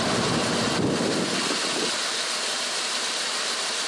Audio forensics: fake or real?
real